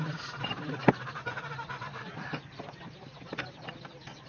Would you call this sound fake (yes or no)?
yes